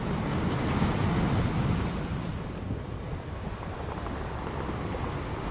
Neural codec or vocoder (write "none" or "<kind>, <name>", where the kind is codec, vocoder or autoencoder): none